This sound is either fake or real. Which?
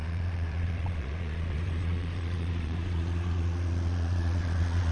fake